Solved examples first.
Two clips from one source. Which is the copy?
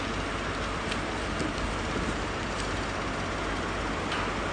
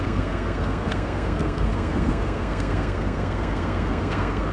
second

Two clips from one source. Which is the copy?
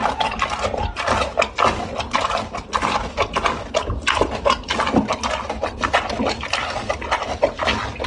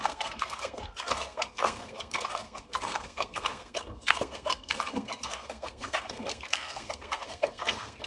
second